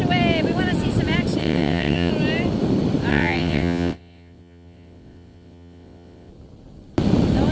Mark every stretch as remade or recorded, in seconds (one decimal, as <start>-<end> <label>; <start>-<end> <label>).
0.0-1.4 recorded; 1.4-2.1 remade; 2.1-3.1 recorded; 3.1-6.3 remade; 6.3-7.5 recorded